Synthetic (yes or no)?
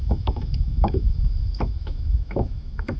yes